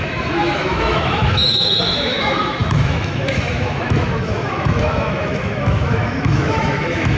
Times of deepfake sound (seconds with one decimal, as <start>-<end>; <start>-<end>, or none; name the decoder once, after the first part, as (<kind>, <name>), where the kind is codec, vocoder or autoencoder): 0.0-7.2 (autoencoder, DAC-VAE)